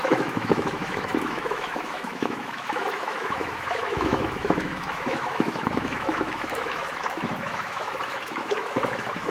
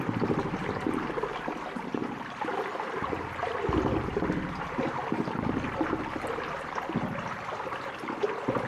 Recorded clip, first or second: second